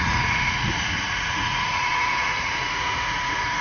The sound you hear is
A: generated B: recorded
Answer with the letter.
A